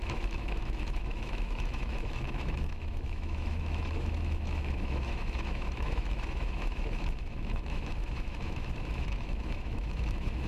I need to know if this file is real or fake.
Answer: fake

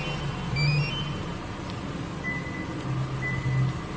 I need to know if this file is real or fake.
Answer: real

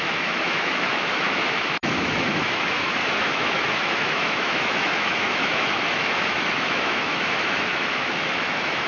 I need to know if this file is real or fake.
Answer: fake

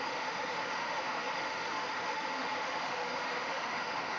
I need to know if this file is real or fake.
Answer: fake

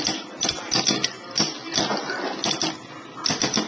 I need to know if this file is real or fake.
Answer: real